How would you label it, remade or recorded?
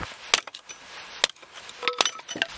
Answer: recorded